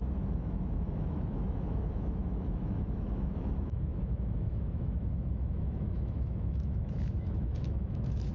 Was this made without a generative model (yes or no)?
no